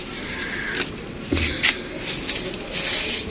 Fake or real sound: real